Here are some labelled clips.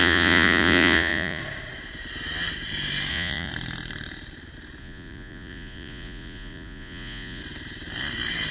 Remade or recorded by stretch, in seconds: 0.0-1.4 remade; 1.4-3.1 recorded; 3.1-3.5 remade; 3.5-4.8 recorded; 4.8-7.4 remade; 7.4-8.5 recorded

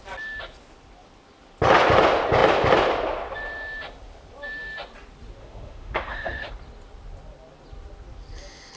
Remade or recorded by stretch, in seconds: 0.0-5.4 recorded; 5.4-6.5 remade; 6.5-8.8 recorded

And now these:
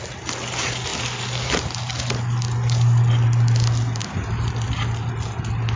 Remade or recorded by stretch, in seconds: 0.0-5.8 recorded

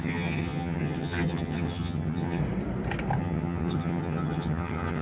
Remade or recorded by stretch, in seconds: 0.0-2.4 remade; 2.4-3.2 recorded; 3.2-5.0 remade

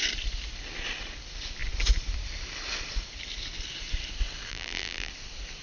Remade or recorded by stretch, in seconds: 0.0-4.5 recorded; 4.5-5.1 remade; 5.1-5.6 recorded

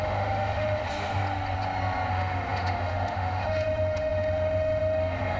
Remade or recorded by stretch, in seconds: 0.0-0.8 remade; 0.8-2.1 recorded; 2.1-5.4 remade

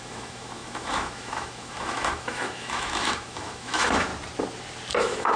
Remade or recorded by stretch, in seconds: 0.0-4.1 remade; 4.1-5.0 recorded; 5.0-5.4 remade